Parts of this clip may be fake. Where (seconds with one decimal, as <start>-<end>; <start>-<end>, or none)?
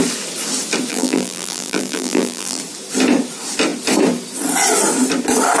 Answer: 0.9-2.6